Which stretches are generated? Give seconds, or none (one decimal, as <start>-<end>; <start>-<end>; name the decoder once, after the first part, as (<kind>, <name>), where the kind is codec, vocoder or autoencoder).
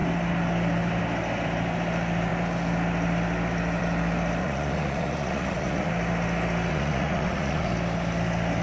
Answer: 4.4-5.9 (vocoder, Vocos); 6.7-7.7